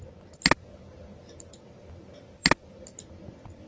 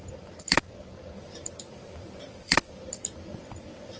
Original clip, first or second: first